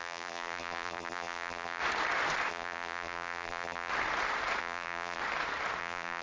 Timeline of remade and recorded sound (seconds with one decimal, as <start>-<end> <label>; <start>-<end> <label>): 0.0-1.8 remade; 1.8-2.5 recorded; 2.5-3.9 remade; 3.9-4.6 recorded; 4.6-5.2 remade; 5.2-5.8 recorded; 5.8-6.2 remade